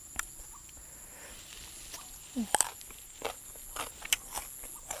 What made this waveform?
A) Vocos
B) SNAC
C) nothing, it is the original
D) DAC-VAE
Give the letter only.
C